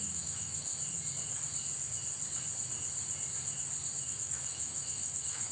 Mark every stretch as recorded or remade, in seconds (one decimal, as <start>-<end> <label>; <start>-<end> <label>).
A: 0.0-0.7 remade; 0.7-4.0 recorded; 4.0-5.5 remade